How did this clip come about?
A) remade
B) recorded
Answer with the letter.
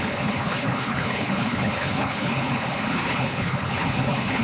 A